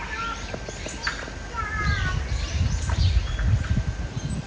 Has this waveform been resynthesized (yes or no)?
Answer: no